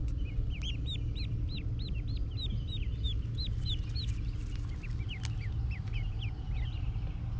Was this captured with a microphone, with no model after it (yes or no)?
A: yes